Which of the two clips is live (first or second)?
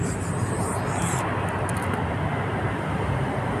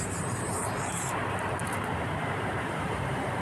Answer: first